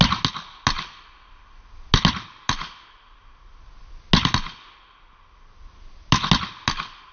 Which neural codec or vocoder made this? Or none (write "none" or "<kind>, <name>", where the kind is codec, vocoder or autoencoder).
none